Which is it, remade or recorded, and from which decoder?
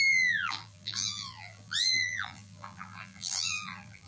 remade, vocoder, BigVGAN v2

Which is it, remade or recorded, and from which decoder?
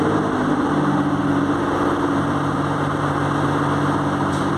recorded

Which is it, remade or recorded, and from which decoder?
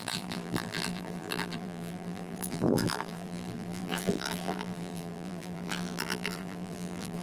remade, vocoder, BigVGAN v2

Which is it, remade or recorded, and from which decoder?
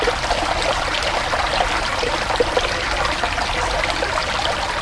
recorded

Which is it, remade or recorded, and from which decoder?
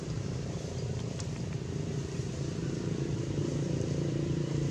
remade, vocoder, BigVGAN v2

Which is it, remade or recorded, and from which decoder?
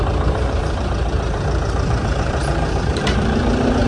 remade, vocoder, BigVGAN v2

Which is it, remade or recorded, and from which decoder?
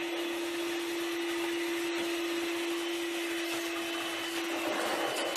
recorded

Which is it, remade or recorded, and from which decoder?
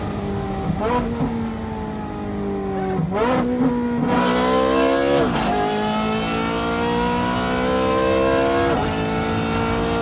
recorded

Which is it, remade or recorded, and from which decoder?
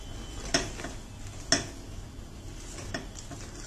recorded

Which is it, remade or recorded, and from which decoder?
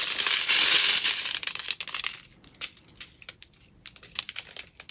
recorded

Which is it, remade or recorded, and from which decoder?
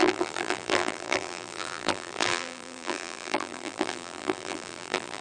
remade, vocoder, BigVGAN v2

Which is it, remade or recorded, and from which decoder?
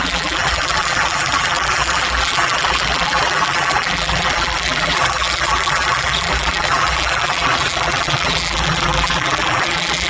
remade, vocoder, BigVGAN v2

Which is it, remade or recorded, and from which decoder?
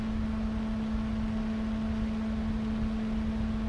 recorded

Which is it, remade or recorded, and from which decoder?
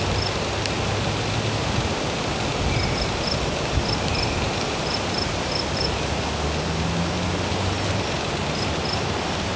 recorded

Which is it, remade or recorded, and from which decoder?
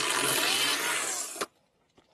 recorded